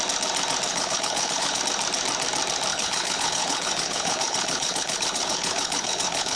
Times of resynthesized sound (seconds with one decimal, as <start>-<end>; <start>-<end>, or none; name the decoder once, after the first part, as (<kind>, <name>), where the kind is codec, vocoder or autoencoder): 0.7-1.6 (codec, HILCodec); 2.7-6.4